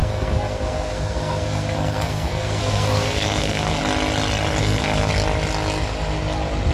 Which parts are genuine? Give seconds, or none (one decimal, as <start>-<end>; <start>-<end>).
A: 3.8-4.6; 5.1-6.7